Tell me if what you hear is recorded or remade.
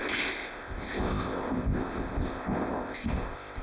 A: remade